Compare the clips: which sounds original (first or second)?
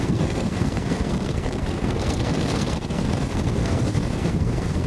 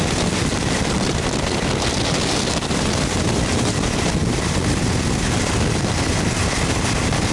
second